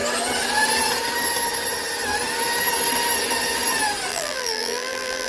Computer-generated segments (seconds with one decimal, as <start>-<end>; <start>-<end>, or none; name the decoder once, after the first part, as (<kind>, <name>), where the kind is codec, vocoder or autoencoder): 4.1-5.3 (vocoder, BigVGAN v2)